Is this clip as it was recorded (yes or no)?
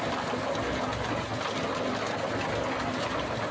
yes